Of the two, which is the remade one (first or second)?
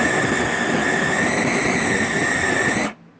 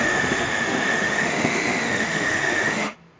second